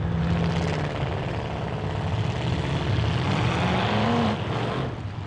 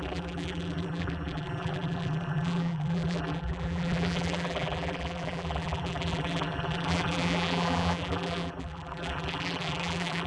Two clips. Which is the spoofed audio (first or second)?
second